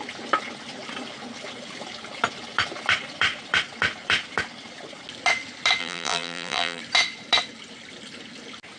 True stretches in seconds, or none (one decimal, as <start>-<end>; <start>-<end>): 0.0-5.8; 6.8-8.8